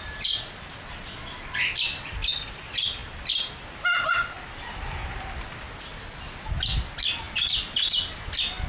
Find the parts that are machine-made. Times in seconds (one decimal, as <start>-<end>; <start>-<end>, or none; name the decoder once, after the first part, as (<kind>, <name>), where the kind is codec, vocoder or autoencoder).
none